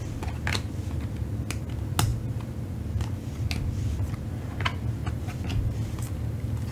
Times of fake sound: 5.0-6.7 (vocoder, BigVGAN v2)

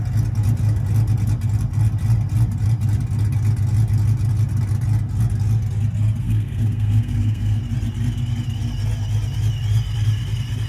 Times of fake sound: 6.2-7.6 (codec, SNAC)

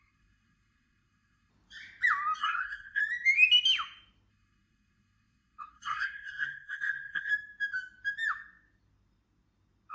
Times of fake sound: 0.0-1.5 (codec, SNAC); 2.4-3.0; 4.3-7.3

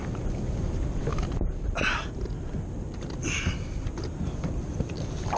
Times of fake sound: none

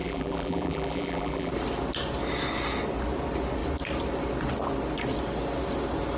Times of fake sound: 0.0-1.5 (vocoder, BigVGAN v2)

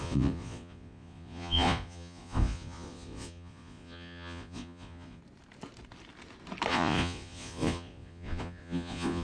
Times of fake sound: 0.0-5.2 (vocoder, Vocos); 6.7-9.2

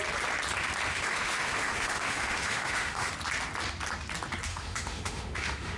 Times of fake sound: 0.9-3.1 (autoencoder, DAC-VAE); 4.5-5.8

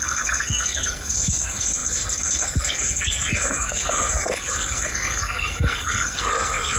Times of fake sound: 0.0-6.8 (codec, SNAC)